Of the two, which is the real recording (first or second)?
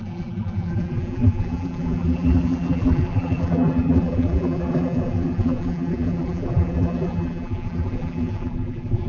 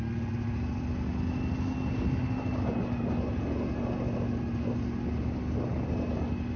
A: second